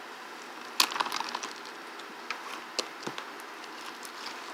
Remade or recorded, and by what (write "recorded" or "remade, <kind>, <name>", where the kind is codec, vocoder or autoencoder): recorded